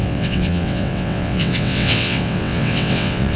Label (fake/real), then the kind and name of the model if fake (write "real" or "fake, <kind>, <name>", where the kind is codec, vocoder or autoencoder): fake, vocoder, WaveNeXt